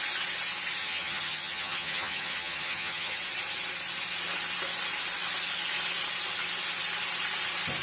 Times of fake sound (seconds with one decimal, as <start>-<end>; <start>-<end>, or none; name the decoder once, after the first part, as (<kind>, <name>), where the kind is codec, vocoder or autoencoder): 0.8-3.2 (vocoder, HiFi-GAN)